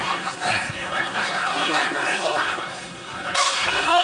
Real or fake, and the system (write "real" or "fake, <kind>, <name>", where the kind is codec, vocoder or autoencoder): fake, codec, SNAC